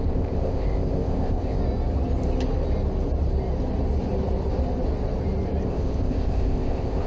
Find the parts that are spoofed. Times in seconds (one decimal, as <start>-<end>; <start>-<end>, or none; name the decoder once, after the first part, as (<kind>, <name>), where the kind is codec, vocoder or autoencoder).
0.0-1.6 (codec, ZipCodec); 5.7-7.1

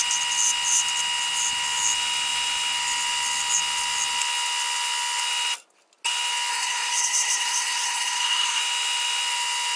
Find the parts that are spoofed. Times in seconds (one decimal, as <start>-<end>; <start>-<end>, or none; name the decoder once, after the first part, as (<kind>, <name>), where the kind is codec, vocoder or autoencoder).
6.5-8.6 (codec, SNAC)

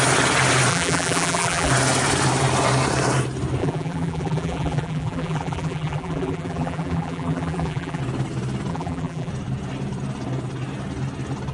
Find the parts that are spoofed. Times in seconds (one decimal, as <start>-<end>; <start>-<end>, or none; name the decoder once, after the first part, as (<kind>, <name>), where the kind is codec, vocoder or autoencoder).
0.7-1.7 (vocoder, BigVGAN v2); 3.6-8.0; 8.7-9.3

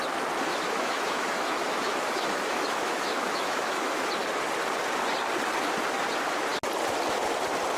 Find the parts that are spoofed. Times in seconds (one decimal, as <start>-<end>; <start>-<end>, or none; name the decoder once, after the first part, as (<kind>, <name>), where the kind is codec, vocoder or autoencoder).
0.5-4.1 (autoencoder, DAC-VAE)

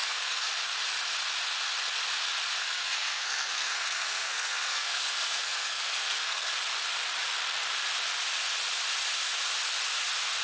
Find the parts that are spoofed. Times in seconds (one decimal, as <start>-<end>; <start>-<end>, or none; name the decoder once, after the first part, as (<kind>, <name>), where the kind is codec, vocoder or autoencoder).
0.0-0.5 (codec, SNAC); 2.6-6.5